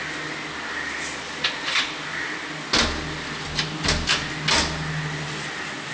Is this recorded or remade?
recorded